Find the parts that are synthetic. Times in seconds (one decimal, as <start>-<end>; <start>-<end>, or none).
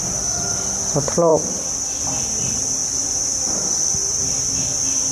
none